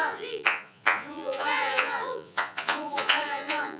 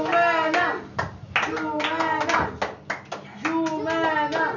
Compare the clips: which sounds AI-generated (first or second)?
first